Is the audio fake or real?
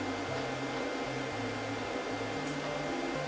real